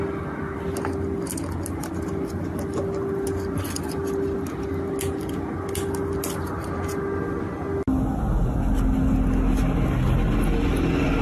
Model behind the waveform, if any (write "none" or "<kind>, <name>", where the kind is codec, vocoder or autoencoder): none